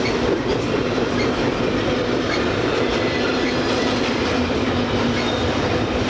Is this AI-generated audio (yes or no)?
yes